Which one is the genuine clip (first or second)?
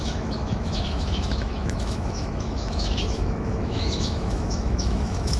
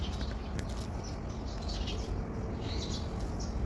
second